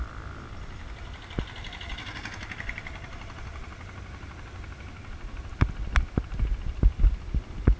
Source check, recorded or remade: recorded